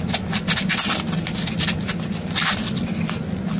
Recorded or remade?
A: recorded